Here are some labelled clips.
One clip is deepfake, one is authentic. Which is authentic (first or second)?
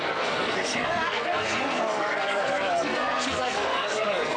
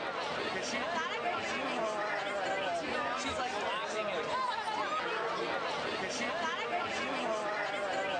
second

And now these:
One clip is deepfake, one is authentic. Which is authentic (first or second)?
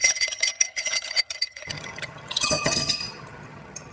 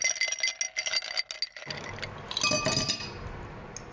second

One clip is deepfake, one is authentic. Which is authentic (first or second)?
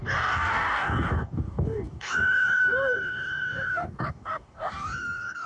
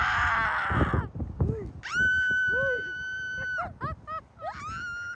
second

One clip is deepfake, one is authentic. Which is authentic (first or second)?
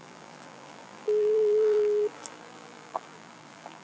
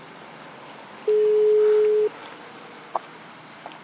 second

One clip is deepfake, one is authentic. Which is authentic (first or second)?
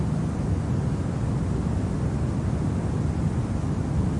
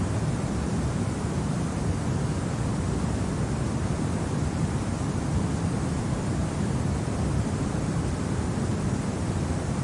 first